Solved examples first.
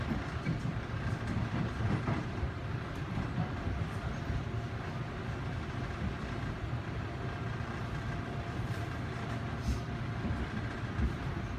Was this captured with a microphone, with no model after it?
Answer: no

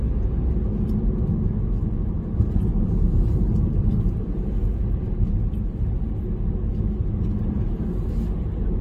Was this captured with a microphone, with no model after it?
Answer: yes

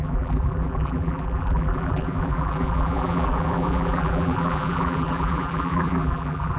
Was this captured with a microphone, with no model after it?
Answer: no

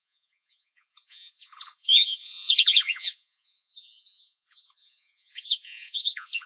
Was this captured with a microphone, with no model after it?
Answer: no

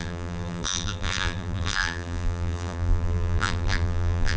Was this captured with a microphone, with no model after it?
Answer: no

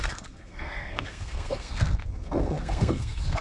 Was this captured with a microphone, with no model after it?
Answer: no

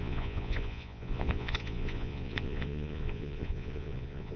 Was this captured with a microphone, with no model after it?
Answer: no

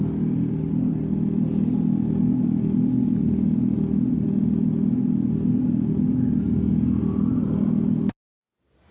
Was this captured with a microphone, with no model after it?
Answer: yes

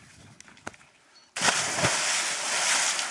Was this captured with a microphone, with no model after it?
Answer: yes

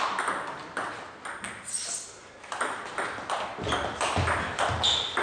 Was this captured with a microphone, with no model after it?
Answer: yes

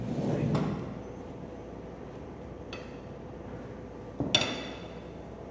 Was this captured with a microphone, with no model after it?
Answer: yes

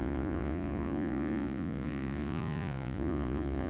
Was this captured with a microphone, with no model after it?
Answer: no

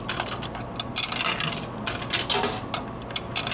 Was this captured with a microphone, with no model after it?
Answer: yes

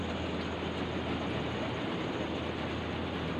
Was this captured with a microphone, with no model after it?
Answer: yes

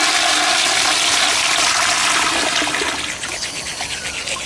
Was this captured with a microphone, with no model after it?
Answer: yes